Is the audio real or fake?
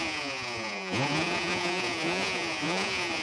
fake